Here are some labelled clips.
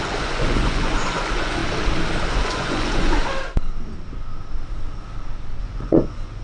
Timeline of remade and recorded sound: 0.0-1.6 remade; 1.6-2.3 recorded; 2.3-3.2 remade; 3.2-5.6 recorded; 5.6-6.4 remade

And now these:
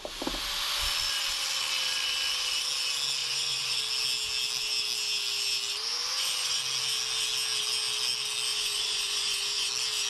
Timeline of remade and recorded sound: 0.0-3.2 recorded; 3.2-3.8 remade; 3.8-5.9 recorded; 5.9-6.6 remade; 6.6-8.5 recorded; 8.5-9.7 remade; 9.7-10.1 recorded

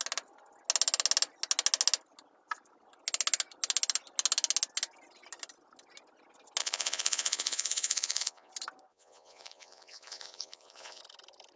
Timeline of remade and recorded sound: 0.0-6.6 recorded; 6.6-8.5 remade; 8.5-8.9 recorded; 8.9-11.0 remade; 11.0-11.6 recorded

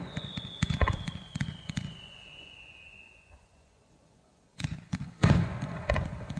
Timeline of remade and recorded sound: 0.0-6.4 remade

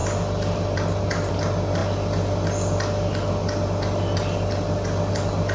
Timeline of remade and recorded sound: 0.0-5.5 recorded

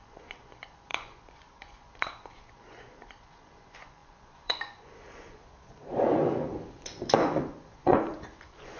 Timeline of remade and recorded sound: 0.0-8.8 remade

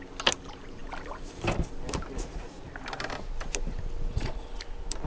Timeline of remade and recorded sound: 0.0-4.1 recorded; 4.1-4.6 remade; 4.6-5.1 recorded